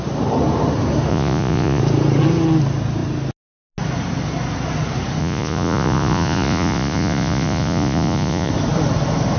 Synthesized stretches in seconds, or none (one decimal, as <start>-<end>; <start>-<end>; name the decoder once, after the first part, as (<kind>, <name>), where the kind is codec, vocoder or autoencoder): 1.1-1.8 (vocoder, Vocos); 5.2-8.5